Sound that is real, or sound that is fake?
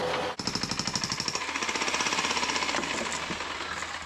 real